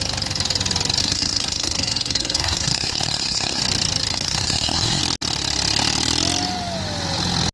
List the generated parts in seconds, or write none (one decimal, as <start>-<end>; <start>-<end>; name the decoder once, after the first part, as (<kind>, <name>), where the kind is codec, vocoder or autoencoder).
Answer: 1.0-3.6 (codec, SNAC); 4.1-5.0